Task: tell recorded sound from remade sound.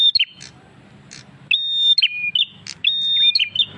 recorded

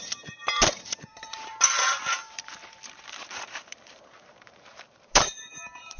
remade